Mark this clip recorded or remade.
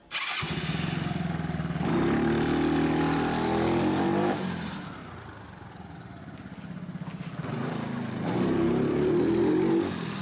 recorded